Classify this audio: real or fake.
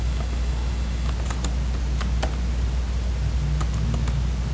real